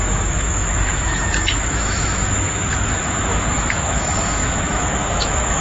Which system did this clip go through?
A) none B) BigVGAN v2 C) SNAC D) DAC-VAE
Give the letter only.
D